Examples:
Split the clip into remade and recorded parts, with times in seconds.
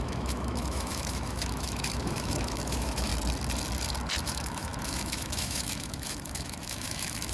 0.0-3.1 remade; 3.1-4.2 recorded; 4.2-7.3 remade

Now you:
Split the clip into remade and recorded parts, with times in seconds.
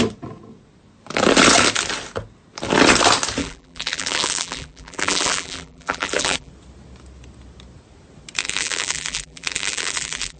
0.0-3.4 recorded; 3.4-6.5 remade; 6.5-8.4 recorded; 8.4-10.4 remade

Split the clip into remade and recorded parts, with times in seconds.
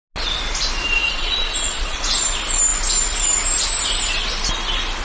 0.0-1.0 recorded; 1.0-2.0 remade; 2.0-5.0 recorded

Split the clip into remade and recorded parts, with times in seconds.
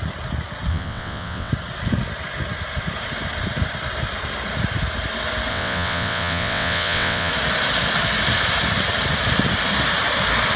0.0-0.7 recorded; 0.7-1.5 remade; 1.5-5.5 recorded; 5.5-7.3 remade; 7.3-10.6 recorded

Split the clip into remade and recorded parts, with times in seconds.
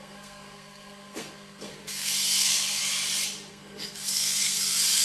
0.0-2.8 remade; 2.8-3.5 recorded; 3.5-5.0 remade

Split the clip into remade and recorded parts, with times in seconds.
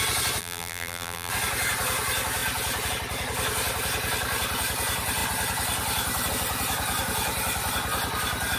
0.0-0.4 recorded; 0.4-1.3 remade; 1.3-8.6 recorded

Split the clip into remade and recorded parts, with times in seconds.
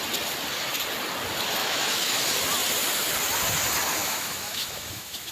0.0-1.6 recorded; 1.6-2.2 remade; 2.2-4.0 recorded; 4.0-5.3 remade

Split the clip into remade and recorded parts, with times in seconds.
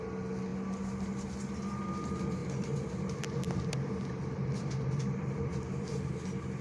0.0-2.4 recorded; 2.4-6.0 remade; 6.0-6.6 recorded